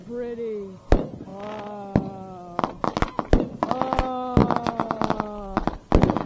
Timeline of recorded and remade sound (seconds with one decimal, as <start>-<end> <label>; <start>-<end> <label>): 0.0-6.3 recorded